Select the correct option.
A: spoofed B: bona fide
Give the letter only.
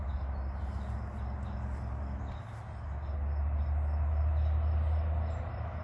B